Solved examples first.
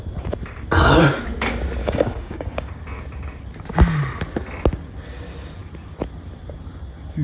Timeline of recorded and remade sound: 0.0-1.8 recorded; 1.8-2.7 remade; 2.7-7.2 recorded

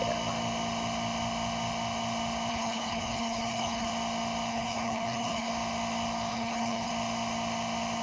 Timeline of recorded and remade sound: 0.0-2.5 recorded; 2.5-3.9 remade; 3.9-4.5 recorded; 4.5-5.5 remade; 5.5-6.3 recorded; 6.3-6.9 remade; 6.9-8.0 recorded

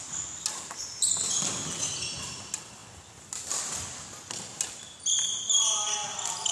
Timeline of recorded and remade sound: 0.0-6.5 recorded

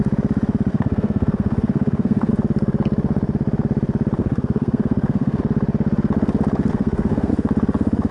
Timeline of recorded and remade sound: 0.0-0.7 recorded; 0.7-2.3 remade; 2.3-4.2 recorded; 4.2-5.4 remade; 5.4-6.7 recorded; 6.7-7.3 remade; 7.3-8.1 recorded

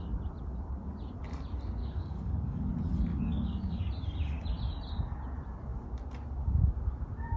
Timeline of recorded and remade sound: 0.0-1.8 recorded; 1.8-2.7 remade; 2.7-3.1 recorded; 3.1-3.9 remade; 3.9-7.4 recorded

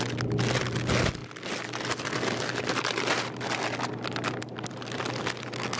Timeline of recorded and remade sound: 0.0-5.8 recorded

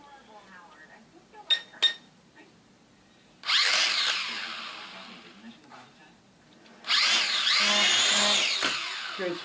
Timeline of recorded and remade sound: 0.0-9.4 recorded

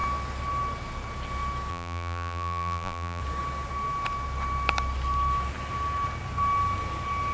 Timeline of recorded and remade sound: 0.0-1.7 recorded; 1.7-3.2 remade; 3.2-7.3 recorded